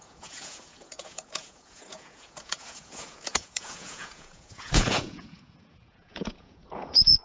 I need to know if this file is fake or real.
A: fake